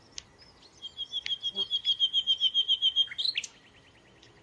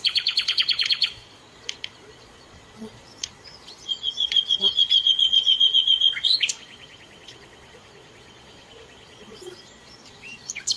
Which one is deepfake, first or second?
second